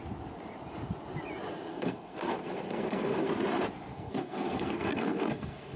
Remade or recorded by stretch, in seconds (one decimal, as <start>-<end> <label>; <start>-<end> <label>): 0.0-1.7 recorded; 1.7-3.3 remade; 3.3-3.9 recorded; 3.9-5.8 remade